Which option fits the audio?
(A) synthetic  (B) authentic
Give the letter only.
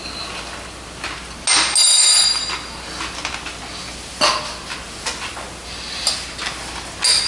B